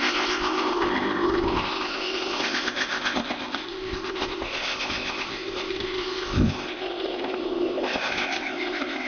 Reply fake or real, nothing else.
fake